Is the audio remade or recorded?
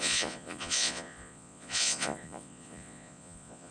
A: remade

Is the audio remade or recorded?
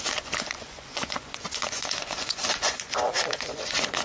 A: remade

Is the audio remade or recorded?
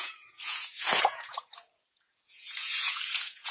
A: remade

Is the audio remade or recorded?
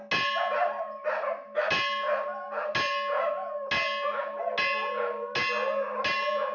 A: recorded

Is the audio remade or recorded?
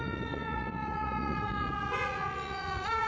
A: remade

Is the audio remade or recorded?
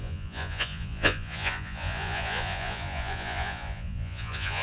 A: remade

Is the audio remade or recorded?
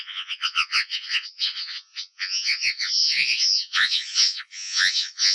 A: remade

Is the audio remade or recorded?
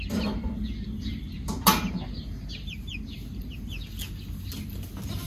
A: recorded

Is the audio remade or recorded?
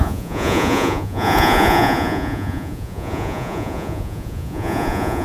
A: remade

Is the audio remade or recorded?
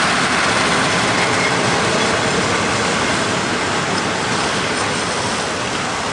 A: recorded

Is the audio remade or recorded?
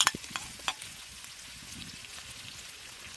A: remade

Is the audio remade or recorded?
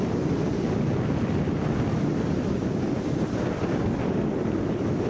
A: recorded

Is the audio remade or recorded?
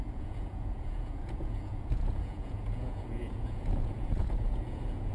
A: remade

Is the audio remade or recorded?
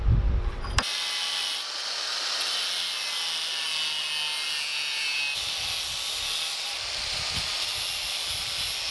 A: recorded